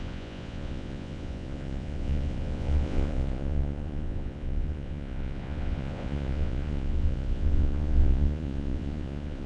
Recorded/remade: remade